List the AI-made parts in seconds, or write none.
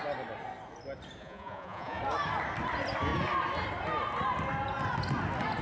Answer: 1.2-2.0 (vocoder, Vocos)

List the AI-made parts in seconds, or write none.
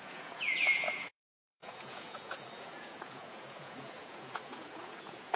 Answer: 0.0-5.4 (vocoder, Vocos)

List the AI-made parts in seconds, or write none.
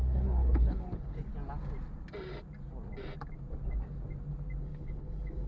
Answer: 0.0-1.3 (codec, HILCodec); 4.6-5.5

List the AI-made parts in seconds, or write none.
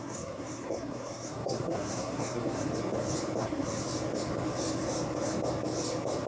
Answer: 0.0-2.7 (codec, SNAC); 3.4-3.8